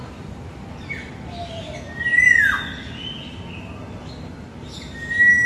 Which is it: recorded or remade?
recorded